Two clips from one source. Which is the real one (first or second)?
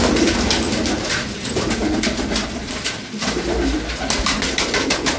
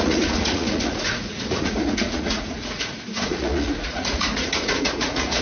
first